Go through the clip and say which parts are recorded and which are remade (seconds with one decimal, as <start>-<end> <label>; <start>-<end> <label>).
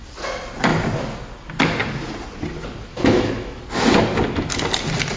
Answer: 0.0-2.9 recorded; 2.9-3.6 remade; 3.6-5.2 recorded